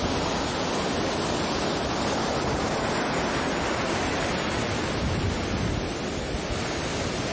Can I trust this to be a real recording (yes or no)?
yes